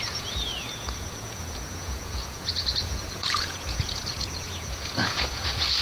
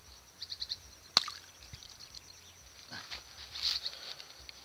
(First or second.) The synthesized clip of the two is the first